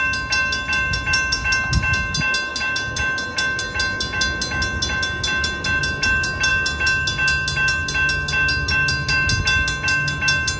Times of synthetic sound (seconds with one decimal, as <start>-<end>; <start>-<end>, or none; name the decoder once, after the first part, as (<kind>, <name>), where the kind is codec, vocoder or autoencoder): none